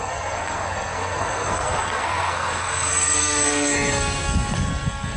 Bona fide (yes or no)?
no